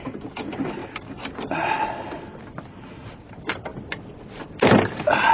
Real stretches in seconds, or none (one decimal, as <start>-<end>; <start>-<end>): 0.0-5.3